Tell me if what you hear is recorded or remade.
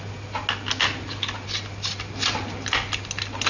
recorded